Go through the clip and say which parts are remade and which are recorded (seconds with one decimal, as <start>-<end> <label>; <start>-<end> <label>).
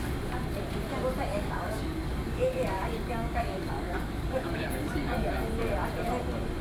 0.0-1.3 recorded; 1.3-5.3 remade; 5.3-6.6 recorded